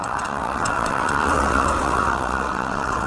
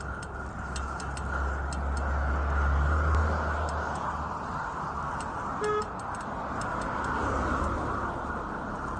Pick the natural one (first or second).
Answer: second